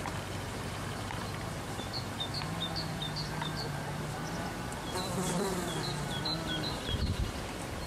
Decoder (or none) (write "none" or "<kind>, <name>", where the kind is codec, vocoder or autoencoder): vocoder, BigVGAN v2